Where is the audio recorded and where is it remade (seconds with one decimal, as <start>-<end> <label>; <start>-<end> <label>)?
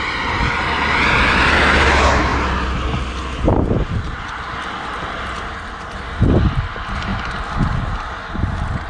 0.0-8.9 recorded